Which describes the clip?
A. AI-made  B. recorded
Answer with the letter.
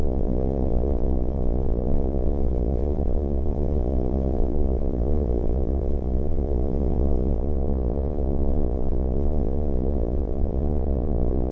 A